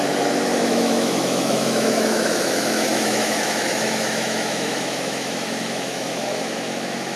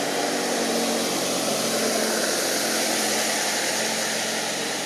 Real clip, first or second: second